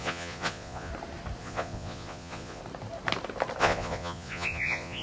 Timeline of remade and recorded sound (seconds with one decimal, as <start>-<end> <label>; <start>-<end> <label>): 0.0-0.9 remade; 0.9-1.4 recorded; 1.4-2.6 remade; 2.6-3.6 recorded; 3.6-5.0 remade